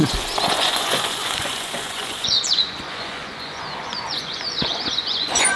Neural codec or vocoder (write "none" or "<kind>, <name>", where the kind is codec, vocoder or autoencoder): vocoder, Vocos